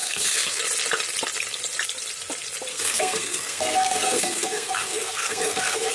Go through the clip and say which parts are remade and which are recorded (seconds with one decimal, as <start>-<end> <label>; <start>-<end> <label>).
0.0-0.6 remade; 0.6-2.7 recorded; 2.7-5.9 remade